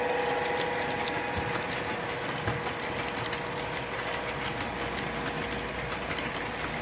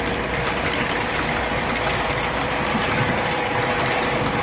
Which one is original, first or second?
first